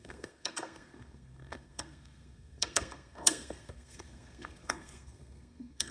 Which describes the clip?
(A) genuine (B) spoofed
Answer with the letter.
B